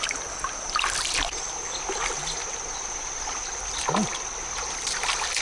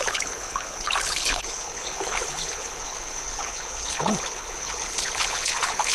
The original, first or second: first